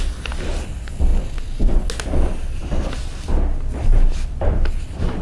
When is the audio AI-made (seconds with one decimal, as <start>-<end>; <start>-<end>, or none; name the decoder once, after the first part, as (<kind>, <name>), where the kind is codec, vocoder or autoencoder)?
none

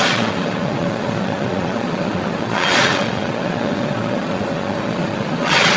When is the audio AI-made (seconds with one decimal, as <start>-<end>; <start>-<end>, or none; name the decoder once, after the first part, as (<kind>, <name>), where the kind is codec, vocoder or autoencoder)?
0.0-5.8 (vocoder, Vocos)

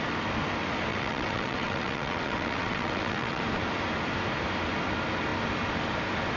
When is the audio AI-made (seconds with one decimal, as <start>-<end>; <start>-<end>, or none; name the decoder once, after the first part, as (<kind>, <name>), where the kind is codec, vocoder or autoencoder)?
0.9-3.4 (vocoder, WaveNeXt)

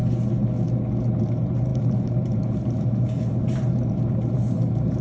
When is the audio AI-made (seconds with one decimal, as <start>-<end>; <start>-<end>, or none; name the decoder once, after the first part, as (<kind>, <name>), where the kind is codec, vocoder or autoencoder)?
1.2-5.0 (vocoder, BigVGAN v2)

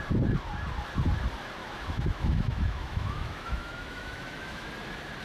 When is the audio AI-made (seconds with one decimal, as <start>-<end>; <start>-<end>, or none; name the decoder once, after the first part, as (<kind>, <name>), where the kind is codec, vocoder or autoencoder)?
1.6-4.7 (autoencoder, DAC-VAE)